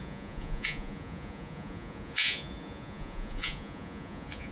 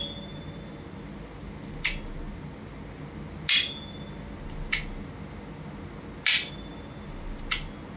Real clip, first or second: second